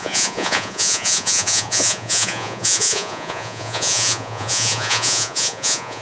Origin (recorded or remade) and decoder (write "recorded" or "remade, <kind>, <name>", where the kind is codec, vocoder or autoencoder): remade, vocoder, Vocos